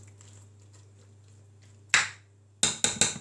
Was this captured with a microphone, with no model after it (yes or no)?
yes